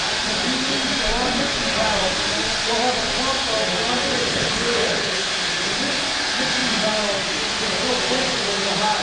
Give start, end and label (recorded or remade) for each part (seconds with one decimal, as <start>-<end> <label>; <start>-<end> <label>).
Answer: 0.0-4.3 recorded; 4.3-5.3 remade; 5.3-9.0 recorded